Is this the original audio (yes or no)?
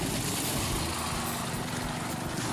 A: yes